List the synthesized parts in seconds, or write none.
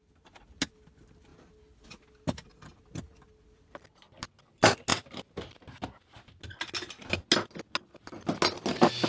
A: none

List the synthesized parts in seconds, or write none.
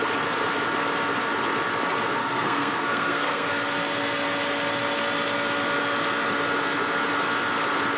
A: 2.2-3.5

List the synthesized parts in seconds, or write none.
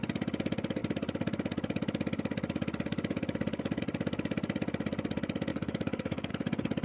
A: 5.5-6.3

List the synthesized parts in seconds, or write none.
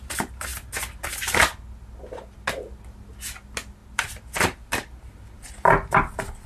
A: 0.5-1.6; 3.8-5.5